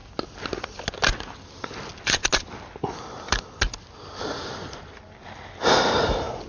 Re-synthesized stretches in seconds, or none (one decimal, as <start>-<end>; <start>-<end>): none